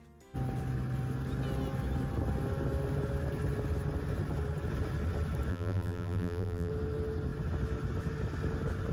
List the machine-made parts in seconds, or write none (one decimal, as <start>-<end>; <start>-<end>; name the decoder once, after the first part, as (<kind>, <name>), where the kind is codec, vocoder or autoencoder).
5.5-6.7 (vocoder, BigVGAN v2)